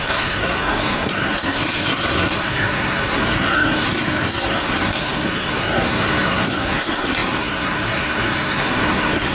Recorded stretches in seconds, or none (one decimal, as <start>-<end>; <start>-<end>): none